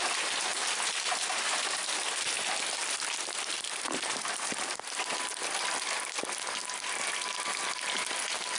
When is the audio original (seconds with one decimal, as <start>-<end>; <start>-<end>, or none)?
0.0-8.6